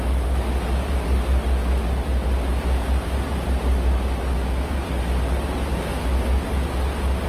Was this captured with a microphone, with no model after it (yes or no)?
yes